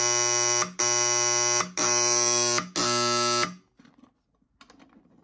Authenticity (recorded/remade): recorded